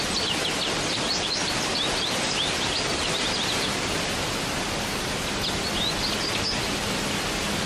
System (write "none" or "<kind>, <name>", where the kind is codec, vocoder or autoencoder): none